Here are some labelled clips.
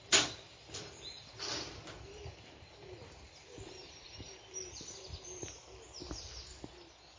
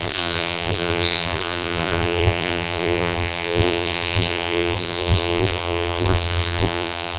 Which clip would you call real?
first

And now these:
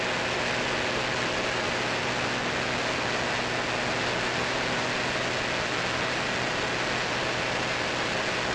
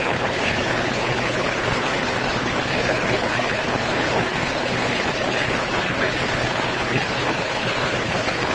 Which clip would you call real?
first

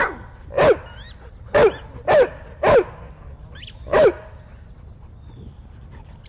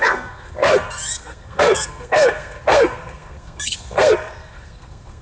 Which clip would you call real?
first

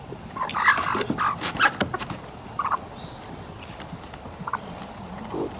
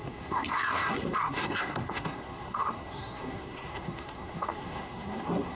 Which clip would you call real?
first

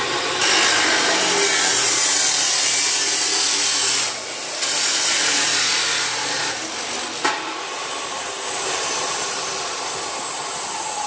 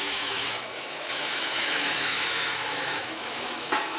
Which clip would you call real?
first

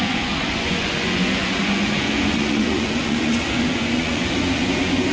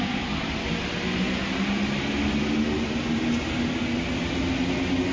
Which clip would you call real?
second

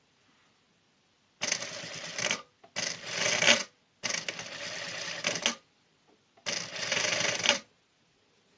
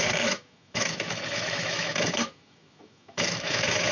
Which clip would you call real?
first